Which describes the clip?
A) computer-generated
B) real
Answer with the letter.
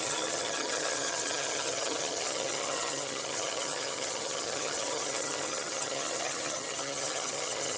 A